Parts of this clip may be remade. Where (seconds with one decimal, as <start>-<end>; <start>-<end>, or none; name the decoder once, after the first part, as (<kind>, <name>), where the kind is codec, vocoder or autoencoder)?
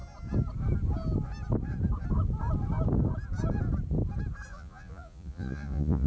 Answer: 4.5-6.1 (vocoder, Vocos)